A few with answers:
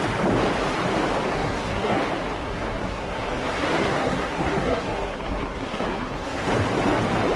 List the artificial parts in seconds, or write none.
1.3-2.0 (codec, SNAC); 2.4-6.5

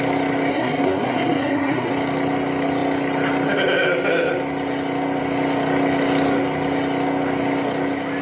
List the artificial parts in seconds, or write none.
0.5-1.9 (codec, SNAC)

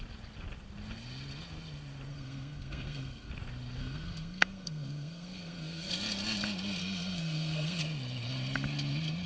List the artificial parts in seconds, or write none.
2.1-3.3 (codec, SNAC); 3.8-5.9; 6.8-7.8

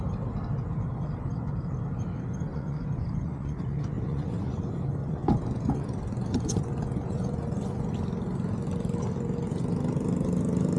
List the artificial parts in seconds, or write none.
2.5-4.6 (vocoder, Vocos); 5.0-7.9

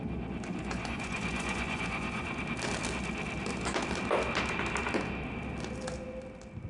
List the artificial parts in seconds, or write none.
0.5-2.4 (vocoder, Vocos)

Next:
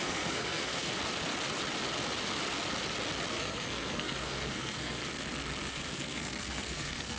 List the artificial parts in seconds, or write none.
0.0-0.9 (codec, SNAC); 3.3-5.0; 5.7-7.2

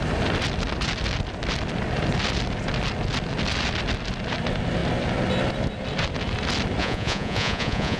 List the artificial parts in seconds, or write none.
6.8-8.0 (vocoder, Vocos)